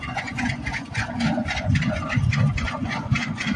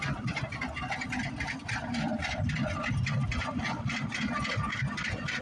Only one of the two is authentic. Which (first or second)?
second